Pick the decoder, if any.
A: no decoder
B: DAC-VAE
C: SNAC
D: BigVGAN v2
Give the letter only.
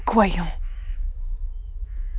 B